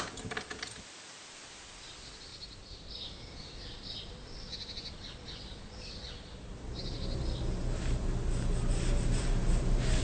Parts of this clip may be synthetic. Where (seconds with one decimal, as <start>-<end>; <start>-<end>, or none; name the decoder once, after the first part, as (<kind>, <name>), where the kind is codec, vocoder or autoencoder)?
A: 2.3-2.8 (vocoder, BigVGAN v2)